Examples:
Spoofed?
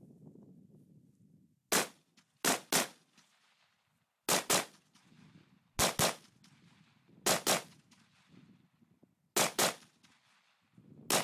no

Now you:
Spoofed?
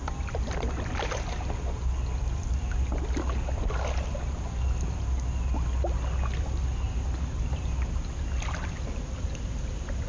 no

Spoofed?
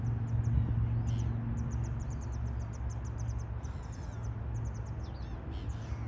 no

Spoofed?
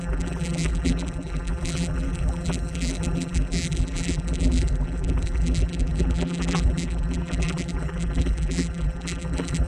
yes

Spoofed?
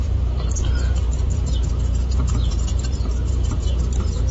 yes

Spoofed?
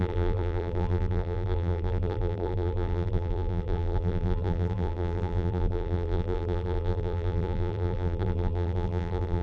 yes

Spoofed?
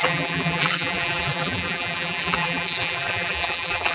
yes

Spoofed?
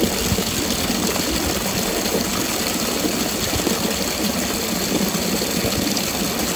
no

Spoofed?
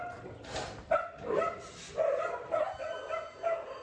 yes